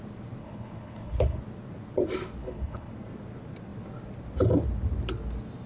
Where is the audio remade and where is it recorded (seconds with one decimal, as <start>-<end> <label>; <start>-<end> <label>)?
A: 0.0-0.4 recorded; 0.4-1.4 remade; 1.4-2.4 recorded; 2.4-2.9 remade; 2.9-5.7 recorded